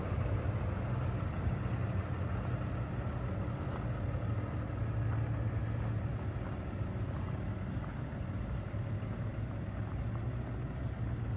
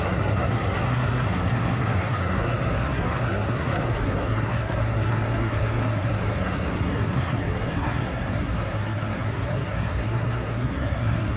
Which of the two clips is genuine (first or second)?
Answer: first